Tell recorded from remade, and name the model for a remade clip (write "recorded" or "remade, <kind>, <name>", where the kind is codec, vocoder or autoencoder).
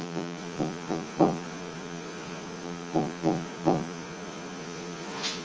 remade, vocoder, Vocos